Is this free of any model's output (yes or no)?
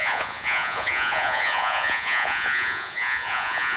no